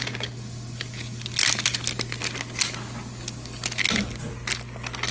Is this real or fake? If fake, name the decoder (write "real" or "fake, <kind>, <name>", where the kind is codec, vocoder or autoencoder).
real